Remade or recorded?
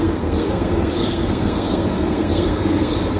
remade